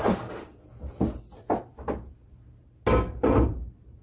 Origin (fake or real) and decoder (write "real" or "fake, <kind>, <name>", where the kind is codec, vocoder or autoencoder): real